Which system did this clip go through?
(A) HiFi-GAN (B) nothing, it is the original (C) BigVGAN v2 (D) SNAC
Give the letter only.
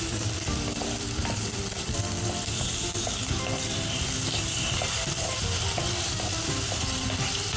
C